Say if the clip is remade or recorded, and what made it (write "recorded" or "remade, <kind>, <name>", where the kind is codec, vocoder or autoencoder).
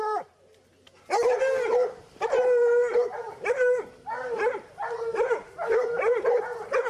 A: remade, vocoder, BigVGAN v2